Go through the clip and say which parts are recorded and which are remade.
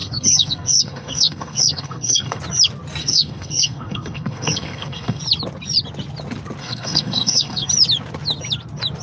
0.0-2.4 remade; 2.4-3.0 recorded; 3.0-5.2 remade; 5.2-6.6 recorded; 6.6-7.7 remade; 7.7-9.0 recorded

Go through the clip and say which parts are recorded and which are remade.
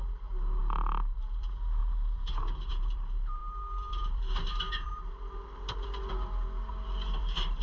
0.0-7.6 remade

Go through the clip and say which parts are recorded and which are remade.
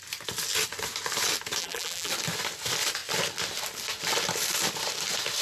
0.0-1.6 recorded; 1.6-2.1 remade; 2.1-5.4 recorded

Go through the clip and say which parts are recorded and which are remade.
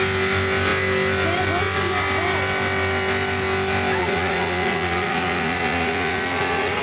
0.0-4.0 recorded; 4.0-6.8 remade